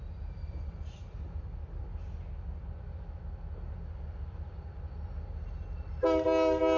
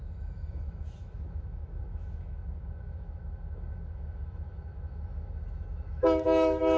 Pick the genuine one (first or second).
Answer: first